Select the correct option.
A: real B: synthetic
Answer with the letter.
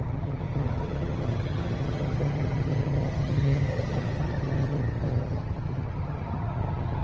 B